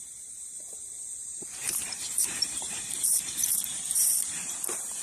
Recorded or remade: remade